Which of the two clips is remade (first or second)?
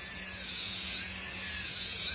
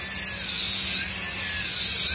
first